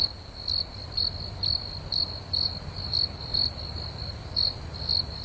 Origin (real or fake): real